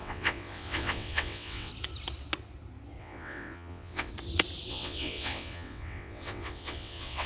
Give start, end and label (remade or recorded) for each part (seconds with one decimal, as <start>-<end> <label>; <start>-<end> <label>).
0.0-1.7 remade; 1.7-3.0 recorded; 3.0-4.1 remade; 4.1-4.7 recorded; 4.7-7.3 remade